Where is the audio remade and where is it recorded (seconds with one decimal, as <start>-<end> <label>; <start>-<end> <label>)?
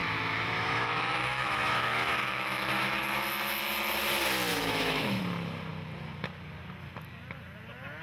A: 0.0-3.0 remade; 3.0-4.5 recorded; 4.5-5.2 remade; 5.2-8.0 recorded